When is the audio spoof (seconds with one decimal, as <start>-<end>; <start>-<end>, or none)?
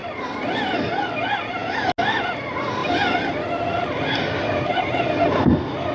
none